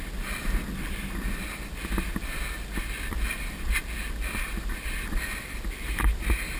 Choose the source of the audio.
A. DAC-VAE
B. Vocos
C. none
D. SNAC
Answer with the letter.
C